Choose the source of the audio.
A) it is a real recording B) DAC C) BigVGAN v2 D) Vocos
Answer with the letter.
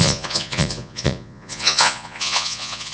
D